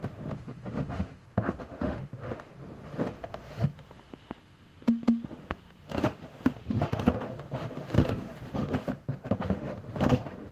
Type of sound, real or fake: fake